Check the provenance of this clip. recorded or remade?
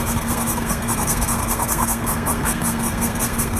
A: remade